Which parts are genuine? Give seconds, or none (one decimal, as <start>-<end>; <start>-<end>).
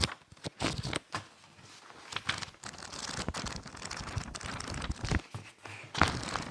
0.0-6.5